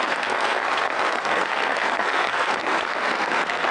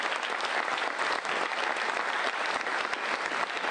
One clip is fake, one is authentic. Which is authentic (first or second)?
second